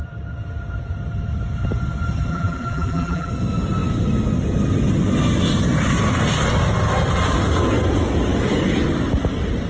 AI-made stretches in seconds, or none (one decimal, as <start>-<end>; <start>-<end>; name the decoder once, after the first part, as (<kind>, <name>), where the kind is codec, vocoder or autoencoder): 2.3-3.3 (vocoder, BigVGAN v2)